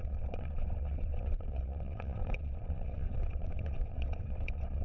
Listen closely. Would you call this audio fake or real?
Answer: fake